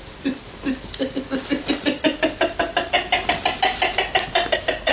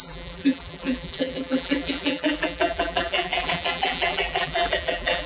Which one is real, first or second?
first